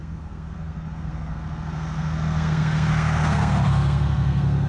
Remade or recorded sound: remade